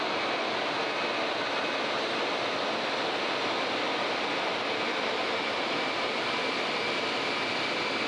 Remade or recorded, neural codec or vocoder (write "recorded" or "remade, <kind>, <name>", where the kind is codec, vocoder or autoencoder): recorded